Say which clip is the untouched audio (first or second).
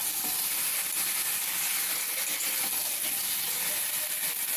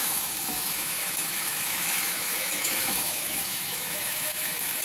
first